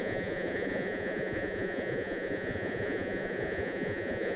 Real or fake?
fake